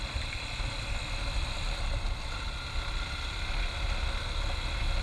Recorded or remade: recorded